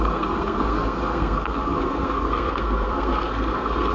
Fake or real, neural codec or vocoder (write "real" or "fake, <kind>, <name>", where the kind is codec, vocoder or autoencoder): fake, codec, SNAC